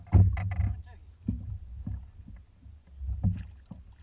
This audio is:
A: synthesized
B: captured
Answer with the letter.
B